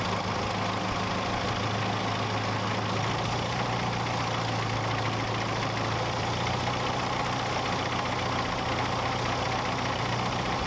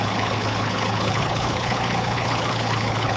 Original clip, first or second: first